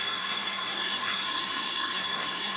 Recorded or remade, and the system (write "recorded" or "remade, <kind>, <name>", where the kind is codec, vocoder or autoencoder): remade, codec, SNAC